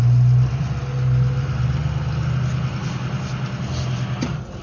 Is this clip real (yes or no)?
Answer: yes